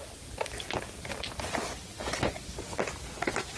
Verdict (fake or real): real